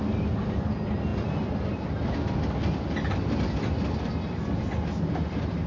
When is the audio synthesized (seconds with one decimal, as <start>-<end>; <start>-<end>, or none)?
none